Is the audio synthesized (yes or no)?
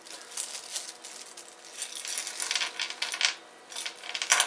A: no